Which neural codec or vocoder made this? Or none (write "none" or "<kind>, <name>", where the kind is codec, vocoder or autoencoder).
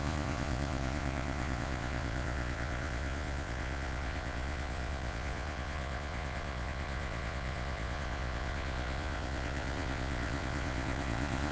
vocoder, Vocos